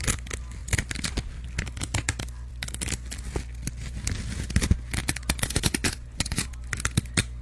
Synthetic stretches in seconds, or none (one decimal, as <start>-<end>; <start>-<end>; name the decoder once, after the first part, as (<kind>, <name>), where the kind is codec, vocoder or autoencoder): 5.0-6.5 (vocoder, Vocos)